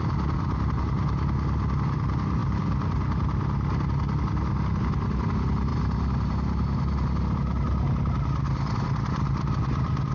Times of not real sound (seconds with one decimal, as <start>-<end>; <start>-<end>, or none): none